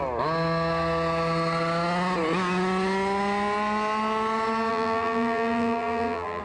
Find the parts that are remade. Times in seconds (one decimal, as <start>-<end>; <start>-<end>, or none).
4.7-6.4